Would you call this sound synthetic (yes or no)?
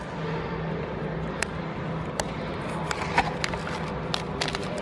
no